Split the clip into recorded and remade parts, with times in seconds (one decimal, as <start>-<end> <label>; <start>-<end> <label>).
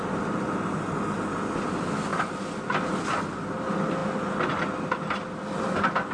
0.0-6.1 recorded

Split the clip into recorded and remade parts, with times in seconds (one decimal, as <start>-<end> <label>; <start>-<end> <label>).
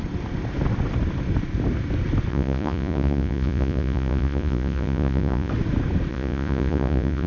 0.0-2.3 recorded; 2.3-5.5 remade; 5.5-6.1 recorded; 6.1-7.3 remade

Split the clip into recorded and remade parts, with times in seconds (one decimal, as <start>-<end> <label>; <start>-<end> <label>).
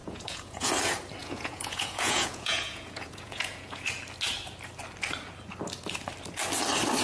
0.0-0.7 remade; 0.7-1.2 recorded; 1.2-3.9 remade; 3.9-7.0 recorded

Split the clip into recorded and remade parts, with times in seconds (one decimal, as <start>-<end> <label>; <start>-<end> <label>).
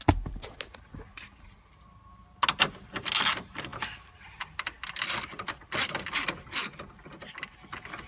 0.0-8.1 recorded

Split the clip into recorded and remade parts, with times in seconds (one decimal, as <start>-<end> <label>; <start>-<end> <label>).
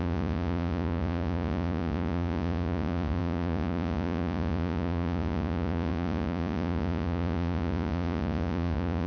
0.0-9.1 remade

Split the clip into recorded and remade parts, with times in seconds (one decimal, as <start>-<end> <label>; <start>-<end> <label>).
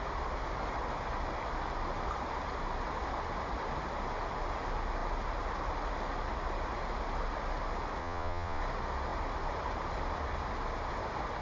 0.0-8.0 recorded; 8.0-8.6 remade; 8.6-11.4 recorded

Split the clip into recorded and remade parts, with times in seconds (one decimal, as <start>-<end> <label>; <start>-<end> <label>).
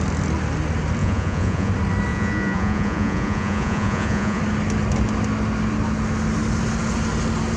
0.0-1.0 recorded; 1.0-1.7 remade; 1.7-2.1 recorded; 2.1-4.4 remade; 4.4-7.6 recorded